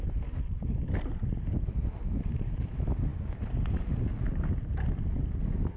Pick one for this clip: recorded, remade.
recorded